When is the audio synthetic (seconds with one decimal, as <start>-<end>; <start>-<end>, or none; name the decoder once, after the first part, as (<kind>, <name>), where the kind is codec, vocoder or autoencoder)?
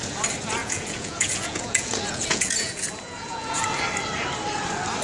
0.6-3.6 (vocoder, Vocos)